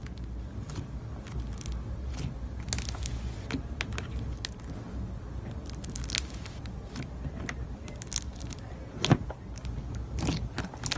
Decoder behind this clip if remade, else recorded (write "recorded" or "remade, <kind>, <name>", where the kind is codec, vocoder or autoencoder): recorded